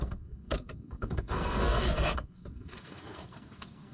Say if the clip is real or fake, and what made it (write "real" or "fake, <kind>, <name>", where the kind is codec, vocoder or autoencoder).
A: fake, codec, SNAC